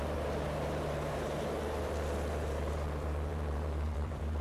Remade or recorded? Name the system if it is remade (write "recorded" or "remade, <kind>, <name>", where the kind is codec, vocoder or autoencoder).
remade, vocoder, BigVGAN v2